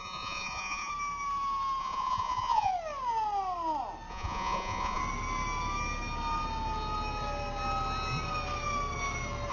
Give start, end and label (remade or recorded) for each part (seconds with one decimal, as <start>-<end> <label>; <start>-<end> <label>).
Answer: 0.0-0.9 remade; 0.9-1.8 recorded; 1.8-2.7 remade; 2.7-4.1 recorded; 4.1-5.0 remade; 5.0-9.5 recorded